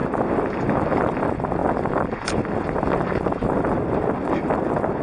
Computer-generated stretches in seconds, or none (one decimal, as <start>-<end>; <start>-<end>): none